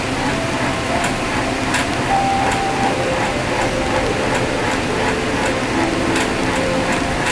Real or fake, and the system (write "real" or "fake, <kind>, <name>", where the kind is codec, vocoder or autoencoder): real